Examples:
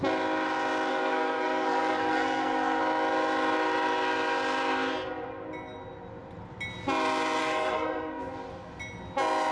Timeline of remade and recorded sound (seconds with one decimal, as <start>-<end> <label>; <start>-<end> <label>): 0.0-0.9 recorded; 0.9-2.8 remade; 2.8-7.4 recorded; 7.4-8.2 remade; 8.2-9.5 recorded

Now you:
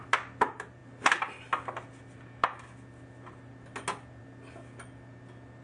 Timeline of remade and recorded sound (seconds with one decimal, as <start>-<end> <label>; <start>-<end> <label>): 0.0-5.6 recorded

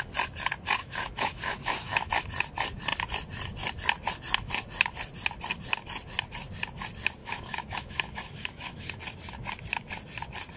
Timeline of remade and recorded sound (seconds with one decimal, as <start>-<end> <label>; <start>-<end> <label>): 0.0-0.8 recorded; 0.8-2.1 remade; 2.1-7.2 recorded; 7.2-9.0 remade; 9.0-10.6 recorded

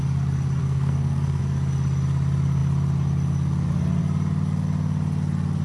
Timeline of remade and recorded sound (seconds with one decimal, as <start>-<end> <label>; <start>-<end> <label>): 0.0-0.6 recorded; 0.6-1.4 remade; 1.4-5.6 recorded

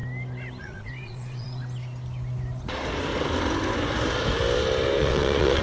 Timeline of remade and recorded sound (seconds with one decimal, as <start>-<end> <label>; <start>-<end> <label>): 0.0-0.6 recorded; 0.6-1.6 remade; 1.6-5.0 recorded; 5.0-5.6 remade

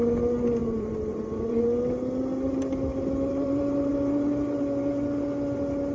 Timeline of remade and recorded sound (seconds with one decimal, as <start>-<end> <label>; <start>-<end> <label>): 0.0-0.6 recorded; 0.6-1.8 remade; 1.8-3.3 recorded; 3.3-3.9 remade; 3.9-5.9 recorded

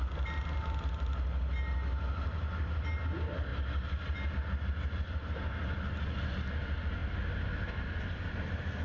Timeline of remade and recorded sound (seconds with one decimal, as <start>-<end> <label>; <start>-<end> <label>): 0.0-8.8 recorded

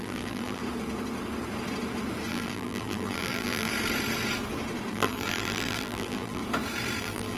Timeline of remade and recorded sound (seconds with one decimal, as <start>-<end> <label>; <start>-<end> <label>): 0.0-0.6 remade; 0.6-2.3 recorded; 2.3-3.7 remade; 3.7-4.9 recorded; 4.9-6.4 remade; 6.4-7.0 recorded; 7.0-7.4 remade